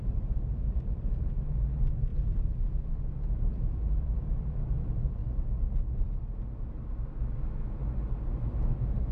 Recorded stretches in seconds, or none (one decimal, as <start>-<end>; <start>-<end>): 5.2-9.1